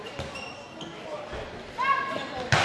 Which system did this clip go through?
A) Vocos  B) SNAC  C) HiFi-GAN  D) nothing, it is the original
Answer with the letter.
D